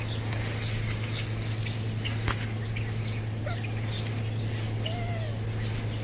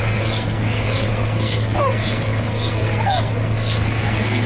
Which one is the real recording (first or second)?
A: first